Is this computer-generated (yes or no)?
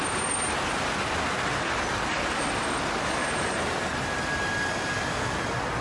no